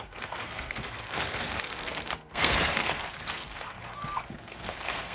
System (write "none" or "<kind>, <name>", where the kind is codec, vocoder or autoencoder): codec, SNAC